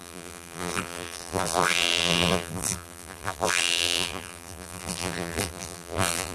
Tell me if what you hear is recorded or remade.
remade